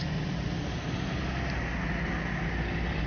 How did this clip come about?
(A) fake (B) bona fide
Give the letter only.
B